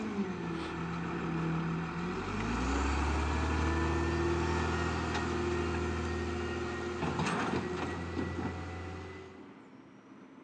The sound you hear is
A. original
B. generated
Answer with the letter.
A